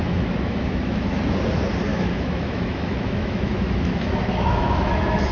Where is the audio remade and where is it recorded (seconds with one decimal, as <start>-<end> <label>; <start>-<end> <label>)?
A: 0.0-1.2 remade; 1.2-1.9 recorded; 1.9-5.3 remade